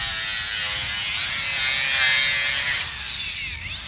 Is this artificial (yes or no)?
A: no